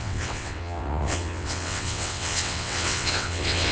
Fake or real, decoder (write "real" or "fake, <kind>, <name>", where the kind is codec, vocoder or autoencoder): fake, vocoder, WaveNeXt